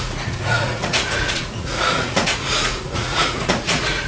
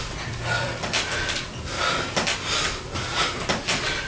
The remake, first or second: first